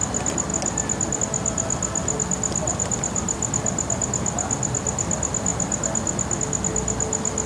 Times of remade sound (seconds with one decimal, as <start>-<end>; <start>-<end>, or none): 2.7-3.5